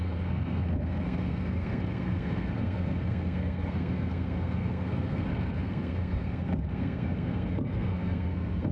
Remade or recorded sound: remade